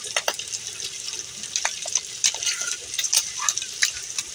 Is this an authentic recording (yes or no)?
yes